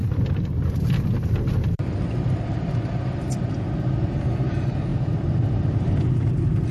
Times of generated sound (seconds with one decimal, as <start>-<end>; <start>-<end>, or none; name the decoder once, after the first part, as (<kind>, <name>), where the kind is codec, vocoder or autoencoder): 0.0-3.4 (vocoder, BigVGAN v2); 4.9-6.3